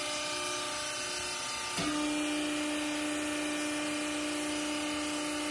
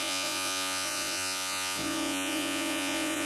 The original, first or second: first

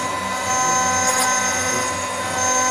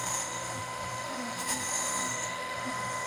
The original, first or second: first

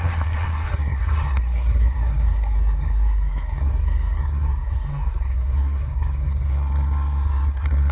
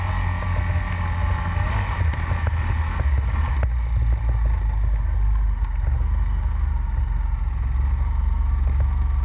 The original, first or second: second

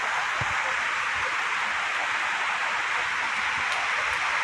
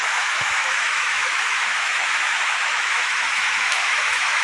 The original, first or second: first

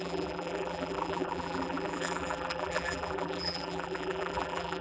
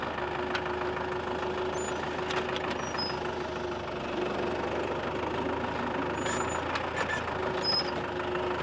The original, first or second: second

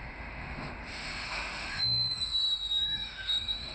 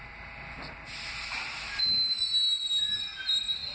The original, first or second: second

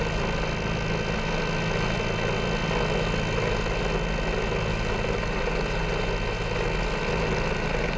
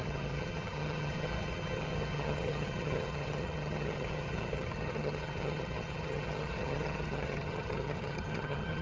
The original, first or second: first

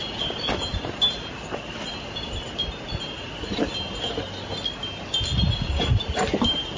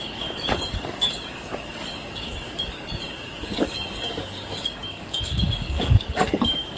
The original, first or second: first